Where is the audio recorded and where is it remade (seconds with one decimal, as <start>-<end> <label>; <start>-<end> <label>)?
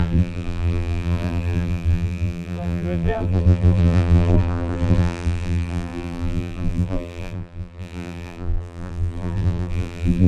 0.0-10.3 remade